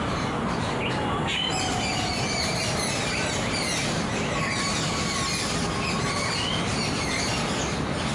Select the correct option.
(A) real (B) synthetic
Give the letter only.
A